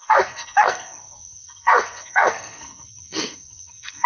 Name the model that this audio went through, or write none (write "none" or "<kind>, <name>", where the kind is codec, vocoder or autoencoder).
codec, SNAC